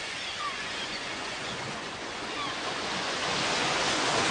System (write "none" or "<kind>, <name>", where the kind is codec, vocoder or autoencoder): vocoder, Vocos